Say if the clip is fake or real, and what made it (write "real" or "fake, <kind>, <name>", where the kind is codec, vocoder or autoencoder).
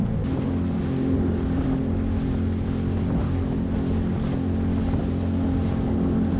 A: real